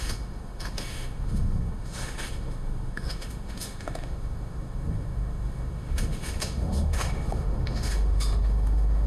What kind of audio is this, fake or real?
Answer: fake